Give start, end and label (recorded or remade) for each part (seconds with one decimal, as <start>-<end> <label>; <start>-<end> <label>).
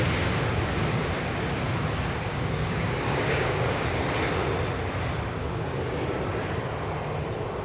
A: 0.0-2.3 recorded; 2.3-3.8 remade; 3.8-5.4 recorded; 5.4-6.0 remade; 6.0-7.6 recorded